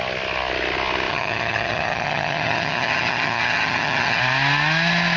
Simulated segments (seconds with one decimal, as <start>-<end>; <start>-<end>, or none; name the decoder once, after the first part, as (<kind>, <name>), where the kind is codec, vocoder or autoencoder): 1.1-4.2 (vocoder, HiFi-GAN)